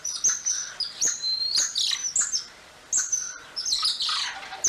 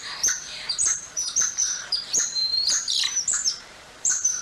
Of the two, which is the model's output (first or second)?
second